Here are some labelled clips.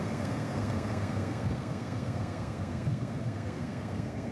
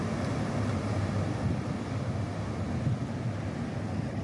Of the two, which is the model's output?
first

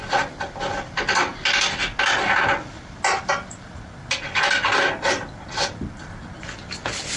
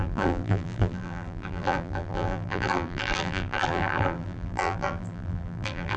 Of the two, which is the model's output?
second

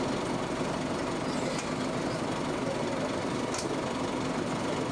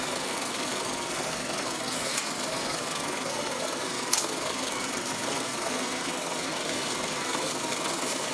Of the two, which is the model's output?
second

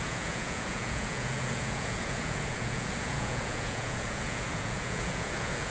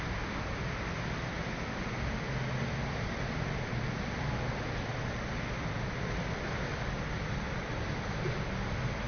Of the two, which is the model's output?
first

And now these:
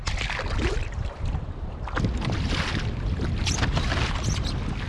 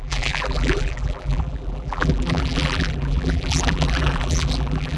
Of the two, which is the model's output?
second